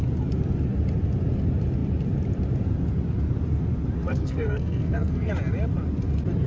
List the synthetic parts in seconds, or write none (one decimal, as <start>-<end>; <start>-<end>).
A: 4.1-5.3